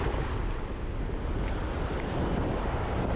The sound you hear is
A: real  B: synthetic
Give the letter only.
A